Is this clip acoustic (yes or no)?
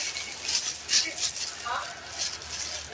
yes